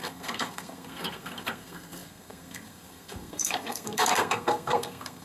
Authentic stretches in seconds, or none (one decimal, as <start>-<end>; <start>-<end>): none

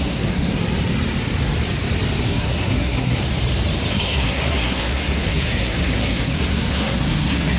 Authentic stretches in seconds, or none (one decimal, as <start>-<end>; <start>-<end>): 0.6-2.2; 3.2-3.9

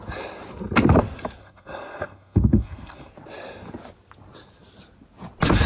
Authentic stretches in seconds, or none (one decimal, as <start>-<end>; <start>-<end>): 0.0-1.4; 3.1-5.7

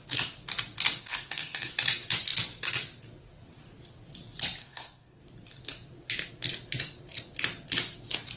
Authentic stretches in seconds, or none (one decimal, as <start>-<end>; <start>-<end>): 0.0-1.0; 1.7-4.6; 5.2-8.4

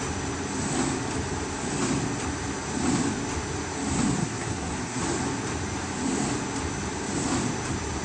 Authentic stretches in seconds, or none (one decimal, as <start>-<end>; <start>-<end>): 0.0-4.2; 5.0-8.0

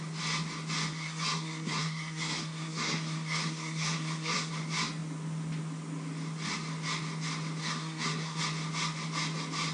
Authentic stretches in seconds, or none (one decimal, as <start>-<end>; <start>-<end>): 0.0-0.9; 4.5-7.6; 8.4-9.7